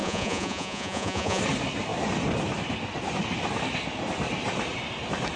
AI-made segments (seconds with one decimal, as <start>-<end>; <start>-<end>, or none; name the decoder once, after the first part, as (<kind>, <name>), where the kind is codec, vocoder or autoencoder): 0.0-1.4 (vocoder, Vocos)